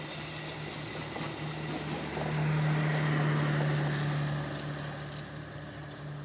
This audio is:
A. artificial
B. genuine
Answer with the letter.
B